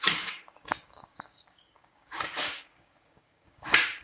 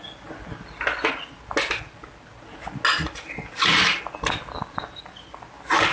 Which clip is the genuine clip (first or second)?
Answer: second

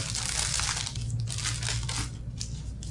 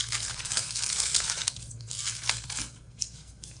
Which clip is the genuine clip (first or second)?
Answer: first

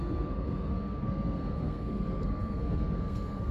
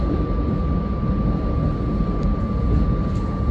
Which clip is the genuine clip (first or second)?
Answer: second